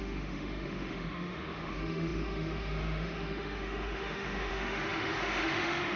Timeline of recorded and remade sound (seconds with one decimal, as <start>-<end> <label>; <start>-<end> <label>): 0.0-6.0 remade